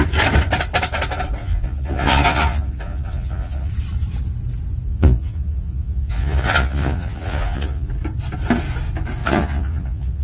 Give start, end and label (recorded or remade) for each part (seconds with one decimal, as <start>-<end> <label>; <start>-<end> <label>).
0.0-1.4 recorded; 1.4-3.7 remade; 3.7-4.9 recorded; 4.9-7.9 remade; 7.9-9.2 recorded; 9.2-10.2 remade